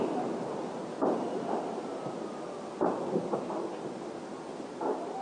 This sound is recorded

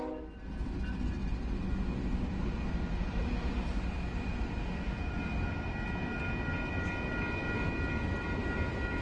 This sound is recorded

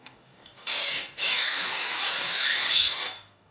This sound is remade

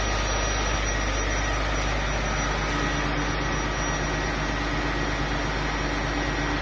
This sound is recorded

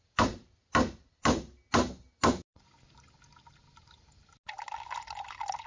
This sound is recorded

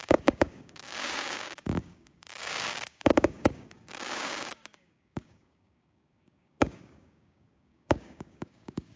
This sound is remade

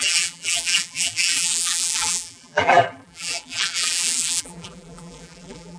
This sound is remade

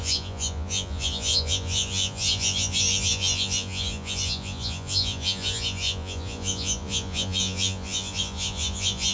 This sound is remade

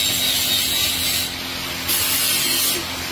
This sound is recorded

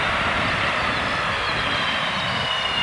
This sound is recorded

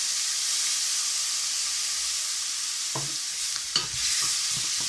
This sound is recorded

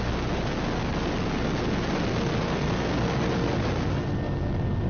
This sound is recorded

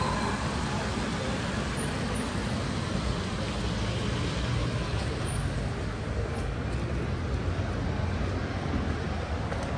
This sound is recorded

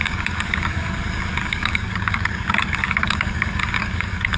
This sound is remade